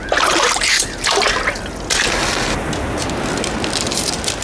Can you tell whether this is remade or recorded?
recorded